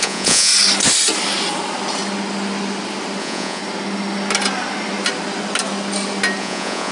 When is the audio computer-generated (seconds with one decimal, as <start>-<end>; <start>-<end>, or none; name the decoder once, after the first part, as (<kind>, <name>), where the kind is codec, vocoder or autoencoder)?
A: 0.0-0.5 (vocoder, Vocos); 3.2-3.6; 6.4-6.9